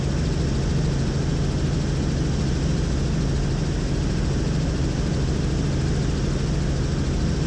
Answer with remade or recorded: recorded